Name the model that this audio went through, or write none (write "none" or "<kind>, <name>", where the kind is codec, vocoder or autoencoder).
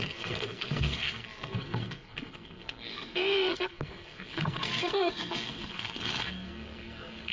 codec, SNAC